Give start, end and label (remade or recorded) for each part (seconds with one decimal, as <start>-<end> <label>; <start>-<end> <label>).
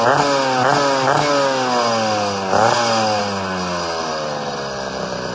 0.0-5.3 recorded